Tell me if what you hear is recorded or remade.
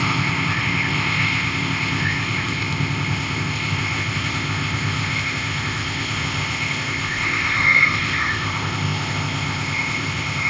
remade